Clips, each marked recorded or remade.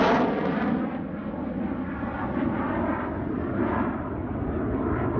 recorded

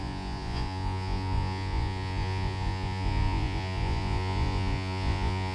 remade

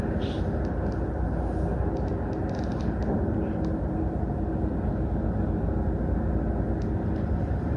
recorded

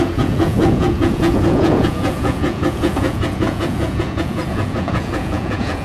remade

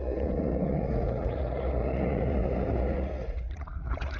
remade